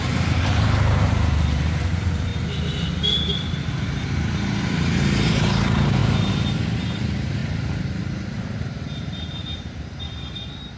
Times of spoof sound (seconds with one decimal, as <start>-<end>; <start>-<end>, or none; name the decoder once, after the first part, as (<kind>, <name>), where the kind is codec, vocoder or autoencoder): 0.0-2.3 (vocoder, BigVGAN v2); 5.3-6.0; 6.6-7.4; 8.4-10.8